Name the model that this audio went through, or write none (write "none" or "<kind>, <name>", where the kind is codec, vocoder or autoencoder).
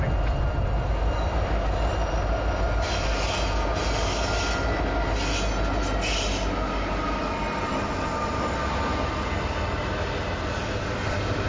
none